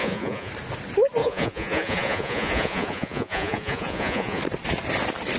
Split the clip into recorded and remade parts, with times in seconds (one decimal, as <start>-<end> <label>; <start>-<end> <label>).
0.0-0.5 remade; 0.5-1.2 recorded; 1.2-4.4 remade; 4.4-5.4 recorded